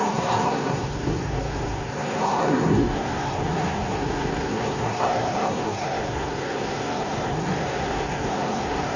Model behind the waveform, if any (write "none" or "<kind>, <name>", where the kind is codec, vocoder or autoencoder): codec, SNAC